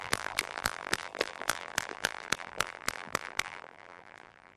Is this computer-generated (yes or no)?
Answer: yes